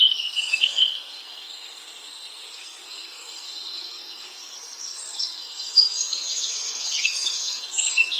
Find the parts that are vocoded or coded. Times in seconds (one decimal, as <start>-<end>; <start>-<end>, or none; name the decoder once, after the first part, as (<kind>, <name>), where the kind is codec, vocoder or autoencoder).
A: 0.0-8.2 (codec, SNAC)